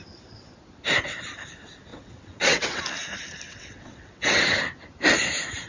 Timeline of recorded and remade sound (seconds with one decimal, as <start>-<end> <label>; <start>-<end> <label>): 0.0-1.9 recorded; 1.9-2.8 remade; 2.8-3.5 recorded; 3.5-4.4 remade; 4.4-5.7 recorded